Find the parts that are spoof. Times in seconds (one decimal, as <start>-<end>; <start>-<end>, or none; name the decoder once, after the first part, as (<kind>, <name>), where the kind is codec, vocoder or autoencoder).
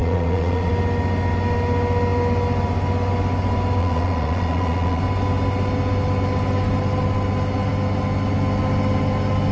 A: 0.0-0.7 (vocoder, Vocos); 3.8-5.0